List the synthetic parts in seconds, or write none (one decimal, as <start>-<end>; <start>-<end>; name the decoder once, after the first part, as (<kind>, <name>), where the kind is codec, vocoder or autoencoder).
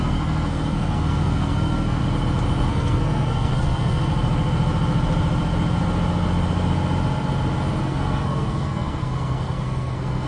0.0-2.0 (codec, SNAC); 2.7-4.1; 7.8-10.3